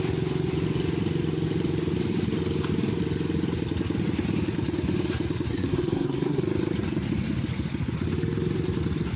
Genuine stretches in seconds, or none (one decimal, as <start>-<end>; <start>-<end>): 0.0-5.5; 6.4-9.2